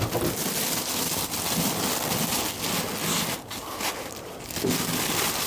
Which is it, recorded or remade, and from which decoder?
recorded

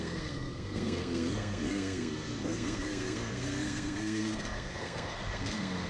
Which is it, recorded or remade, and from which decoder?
remade, codec, SNAC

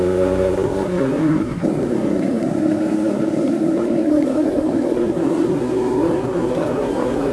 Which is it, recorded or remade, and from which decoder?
remade, codec, SNAC